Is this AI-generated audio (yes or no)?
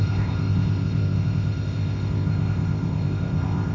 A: yes